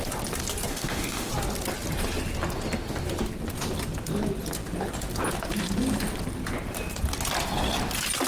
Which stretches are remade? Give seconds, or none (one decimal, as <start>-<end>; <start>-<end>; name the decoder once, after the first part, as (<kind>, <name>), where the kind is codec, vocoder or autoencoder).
0.7-1.3 (autoencoder, DAC-VAE)